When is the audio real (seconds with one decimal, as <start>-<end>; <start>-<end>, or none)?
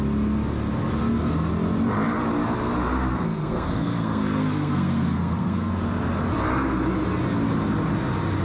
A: 0.0-3.1; 5.7-8.4